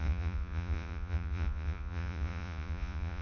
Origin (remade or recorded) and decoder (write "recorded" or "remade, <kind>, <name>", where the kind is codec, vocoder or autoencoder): remade, vocoder, Vocos